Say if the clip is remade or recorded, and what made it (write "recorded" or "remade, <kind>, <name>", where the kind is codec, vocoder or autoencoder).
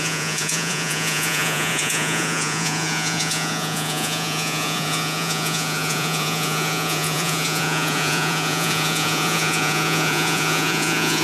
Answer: remade, vocoder, Vocos